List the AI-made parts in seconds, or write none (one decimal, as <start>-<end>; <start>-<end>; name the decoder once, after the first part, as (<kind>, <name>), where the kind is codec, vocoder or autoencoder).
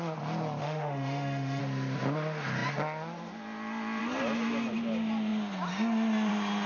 0.6-1.6 (autoencoder, DAC-VAE)